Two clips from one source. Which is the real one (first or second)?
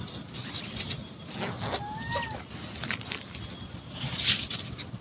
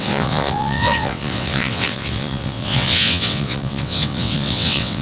first